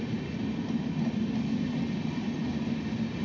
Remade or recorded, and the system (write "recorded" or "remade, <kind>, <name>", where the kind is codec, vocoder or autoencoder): recorded